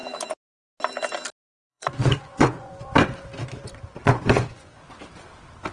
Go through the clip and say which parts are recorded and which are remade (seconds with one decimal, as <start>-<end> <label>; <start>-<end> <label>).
0.0-1.7 recorded; 1.7-2.7 remade; 2.7-4.0 recorded; 4.0-4.8 remade; 4.8-5.7 recorded